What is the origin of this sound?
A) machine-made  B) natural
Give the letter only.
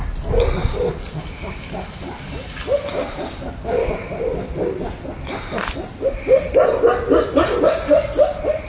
B